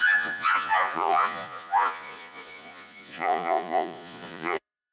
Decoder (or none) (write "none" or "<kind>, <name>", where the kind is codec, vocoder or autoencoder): vocoder, Vocos